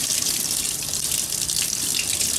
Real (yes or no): no